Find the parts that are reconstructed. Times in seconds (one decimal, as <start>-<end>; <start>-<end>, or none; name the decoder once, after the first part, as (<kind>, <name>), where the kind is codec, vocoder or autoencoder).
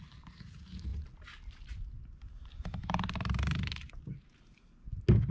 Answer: none